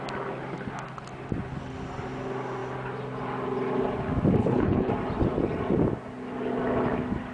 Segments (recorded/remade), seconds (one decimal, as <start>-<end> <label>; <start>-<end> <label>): 0.0-4.4 recorded; 4.4-4.9 remade; 4.9-7.3 recorded